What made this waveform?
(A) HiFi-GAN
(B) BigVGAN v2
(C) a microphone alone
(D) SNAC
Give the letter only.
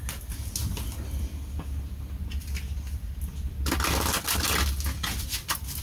C